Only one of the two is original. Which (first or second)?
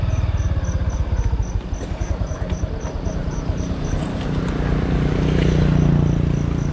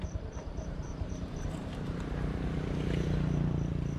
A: first